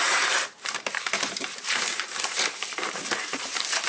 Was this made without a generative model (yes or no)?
no